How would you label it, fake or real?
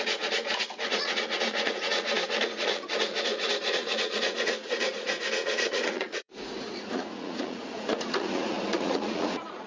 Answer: fake